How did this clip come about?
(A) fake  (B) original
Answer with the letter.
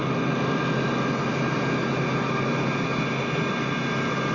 B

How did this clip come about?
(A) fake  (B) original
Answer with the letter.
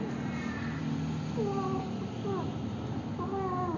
B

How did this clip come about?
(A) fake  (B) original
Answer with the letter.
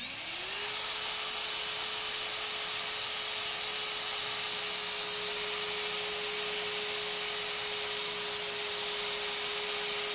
B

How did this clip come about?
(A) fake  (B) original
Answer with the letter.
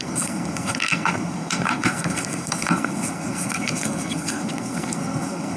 A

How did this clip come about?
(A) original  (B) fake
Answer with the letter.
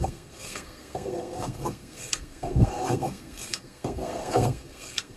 B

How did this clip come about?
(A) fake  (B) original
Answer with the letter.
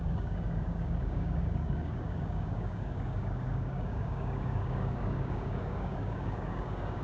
A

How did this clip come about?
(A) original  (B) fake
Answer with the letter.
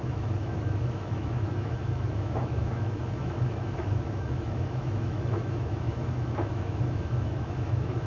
B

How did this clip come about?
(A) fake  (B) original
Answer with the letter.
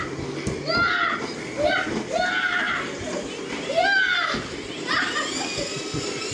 B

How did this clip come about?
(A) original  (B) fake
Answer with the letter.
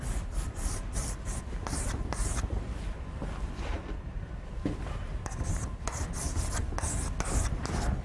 B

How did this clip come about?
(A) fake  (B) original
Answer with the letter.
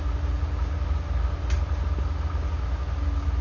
B